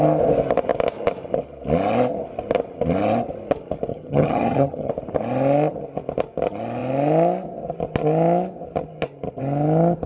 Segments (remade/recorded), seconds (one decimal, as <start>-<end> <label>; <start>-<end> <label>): 0.0-3.9 recorded; 3.9-4.9 remade; 4.9-10.1 recorded